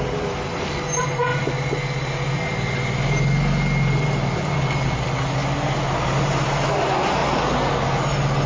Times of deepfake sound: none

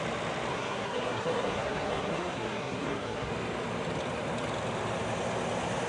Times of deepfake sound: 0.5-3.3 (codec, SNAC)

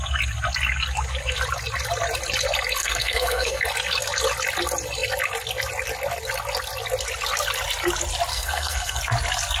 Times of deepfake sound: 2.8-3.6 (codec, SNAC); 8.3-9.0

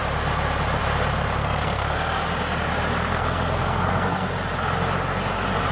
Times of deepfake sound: 1.4-2.2 (codec, SNAC); 3.1-4.3

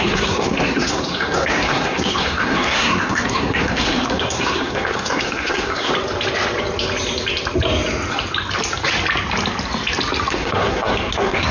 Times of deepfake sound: 0.0-5.9 (codec, SNAC); 10.3-11.5

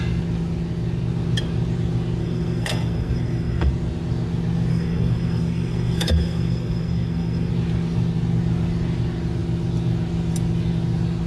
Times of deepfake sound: 2.2-3.7 (codec, SNAC); 4.7-7.5